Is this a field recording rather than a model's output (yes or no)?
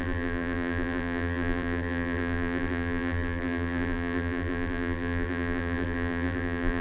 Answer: no